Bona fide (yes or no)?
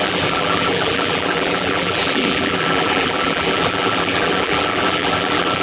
no